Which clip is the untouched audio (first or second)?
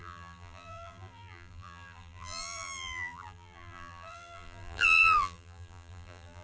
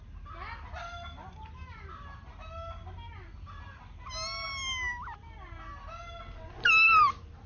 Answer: second